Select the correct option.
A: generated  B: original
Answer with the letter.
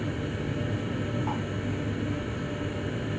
B